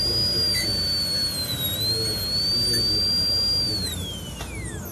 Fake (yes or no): no